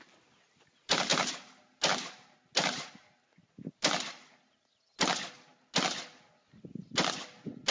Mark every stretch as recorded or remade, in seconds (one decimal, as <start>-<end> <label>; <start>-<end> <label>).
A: 0.0-7.7 recorded